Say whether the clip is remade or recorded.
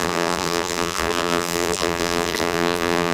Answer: remade